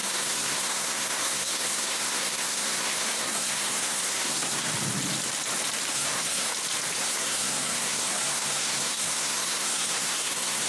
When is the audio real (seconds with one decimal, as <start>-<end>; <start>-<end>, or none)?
4.7-5.9; 6.5-7.0